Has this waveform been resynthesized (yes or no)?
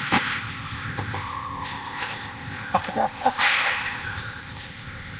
yes